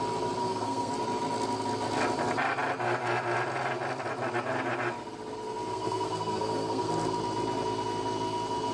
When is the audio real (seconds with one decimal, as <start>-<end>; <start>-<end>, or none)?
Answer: 0.0-0.4; 0.9-5.7; 6.9-8.7